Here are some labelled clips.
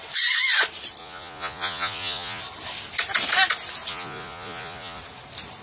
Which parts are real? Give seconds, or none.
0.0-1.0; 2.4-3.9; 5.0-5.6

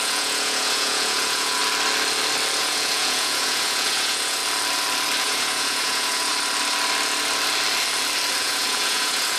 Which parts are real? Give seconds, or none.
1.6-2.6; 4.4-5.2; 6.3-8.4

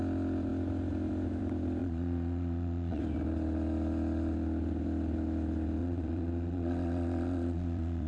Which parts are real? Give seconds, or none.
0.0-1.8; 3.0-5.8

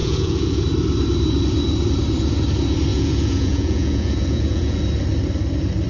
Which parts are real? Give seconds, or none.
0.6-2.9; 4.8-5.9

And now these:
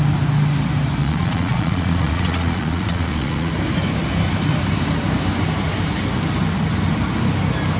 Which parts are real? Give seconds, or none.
0.0-1.0; 3.5-7.8

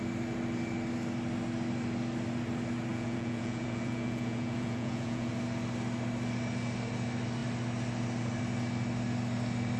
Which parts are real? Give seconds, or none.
0.0-2.9; 5.3-9.8

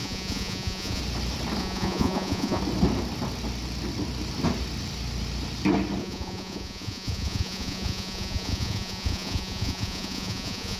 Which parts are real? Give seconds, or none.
1.0-1.6; 2.6-6.0

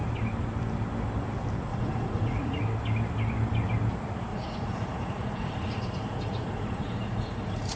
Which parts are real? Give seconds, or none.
0.0-1.7; 2.6-4.3